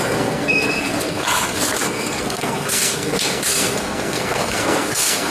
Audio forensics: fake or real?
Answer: fake